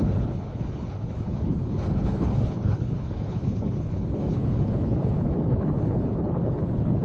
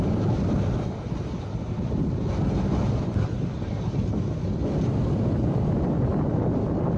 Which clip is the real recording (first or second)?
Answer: second